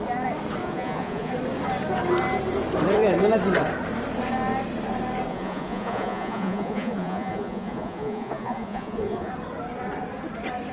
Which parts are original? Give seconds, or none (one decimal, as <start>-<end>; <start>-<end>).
0.0-0.6; 1.3-5.3; 9.3-10.7